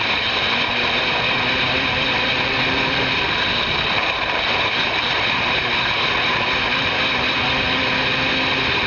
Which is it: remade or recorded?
recorded